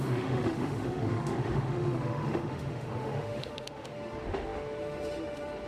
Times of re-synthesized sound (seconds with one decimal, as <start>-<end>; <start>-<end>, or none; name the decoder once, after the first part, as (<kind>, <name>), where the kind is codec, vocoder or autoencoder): 0.0-5.7 (autoencoder, DAC-VAE)